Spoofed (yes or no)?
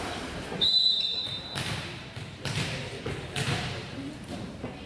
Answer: yes